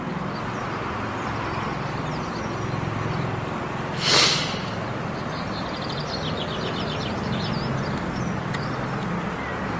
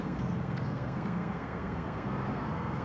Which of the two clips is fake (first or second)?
second